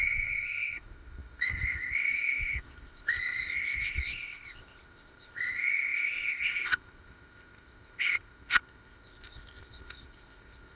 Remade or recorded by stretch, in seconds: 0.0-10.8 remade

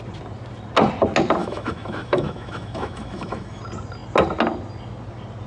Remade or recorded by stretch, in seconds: 0.0-1.4 recorded; 1.4-3.6 remade; 3.6-5.5 recorded